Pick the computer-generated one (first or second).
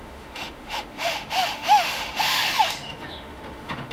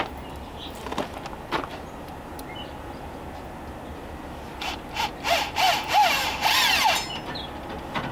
first